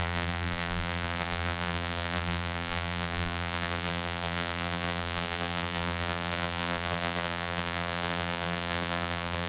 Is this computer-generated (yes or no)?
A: yes